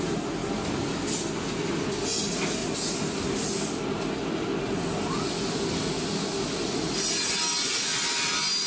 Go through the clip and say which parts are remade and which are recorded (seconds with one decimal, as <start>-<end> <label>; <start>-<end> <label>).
0.0-8.7 recorded